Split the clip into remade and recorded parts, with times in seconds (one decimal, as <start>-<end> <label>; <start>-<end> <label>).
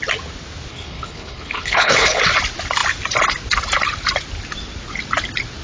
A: 0.0-0.7 recorded; 0.7-2.2 remade; 2.2-5.6 recorded